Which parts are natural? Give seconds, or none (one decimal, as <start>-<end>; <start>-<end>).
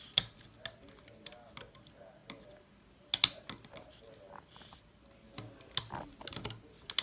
0.0-7.0